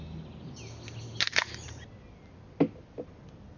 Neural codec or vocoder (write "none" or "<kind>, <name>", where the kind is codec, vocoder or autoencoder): none